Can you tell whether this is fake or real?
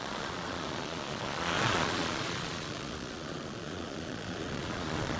fake